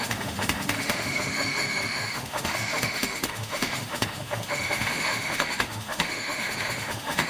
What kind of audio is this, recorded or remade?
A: remade